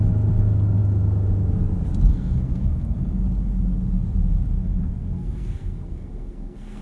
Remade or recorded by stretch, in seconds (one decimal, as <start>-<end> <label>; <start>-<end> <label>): 0.0-2.1 recorded; 2.1-3.2 remade; 3.2-4.6 recorded; 4.6-6.8 remade